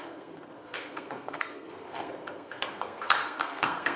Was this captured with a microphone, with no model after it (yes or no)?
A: no